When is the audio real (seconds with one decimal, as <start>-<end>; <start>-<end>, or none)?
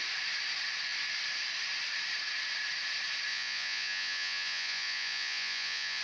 0.0-3.3